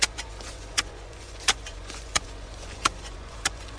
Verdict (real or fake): fake